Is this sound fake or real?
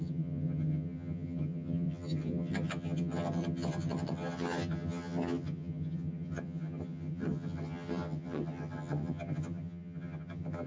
fake